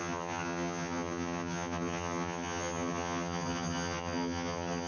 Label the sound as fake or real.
fake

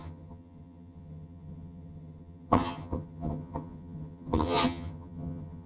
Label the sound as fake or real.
fake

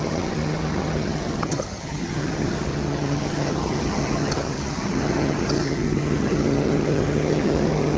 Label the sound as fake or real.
fake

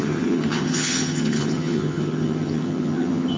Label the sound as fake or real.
fake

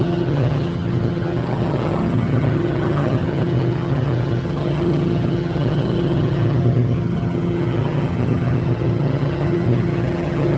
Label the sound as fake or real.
fake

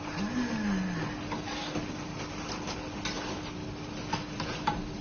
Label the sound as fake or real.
real